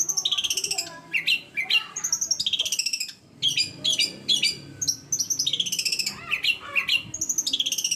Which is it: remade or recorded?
recorded